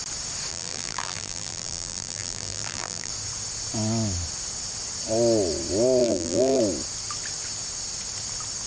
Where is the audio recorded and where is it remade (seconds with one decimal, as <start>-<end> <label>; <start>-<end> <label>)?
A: 0.0-0.5 recorded; 0.5-3.1 remade; 3.1-6.0 recorded; 6.0-6.6 remade; 6.6-8.7 recorded